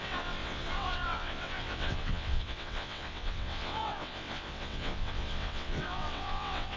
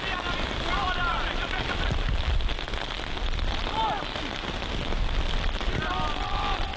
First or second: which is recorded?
second